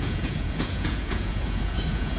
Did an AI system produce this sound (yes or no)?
yes